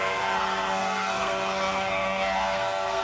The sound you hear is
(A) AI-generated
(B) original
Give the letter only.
A